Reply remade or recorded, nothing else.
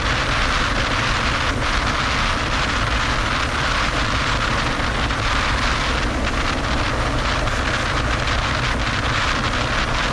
recorded